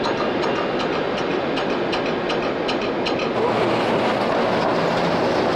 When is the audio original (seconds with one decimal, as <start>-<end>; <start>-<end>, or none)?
0.0-5.6